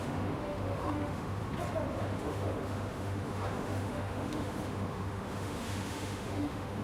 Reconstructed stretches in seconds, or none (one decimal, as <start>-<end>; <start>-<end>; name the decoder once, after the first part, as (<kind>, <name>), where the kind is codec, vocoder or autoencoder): 0.0-1.4 (autoencoder, DAC-VAE); 2.0-6.8